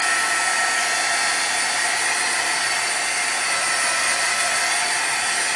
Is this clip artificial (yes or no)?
no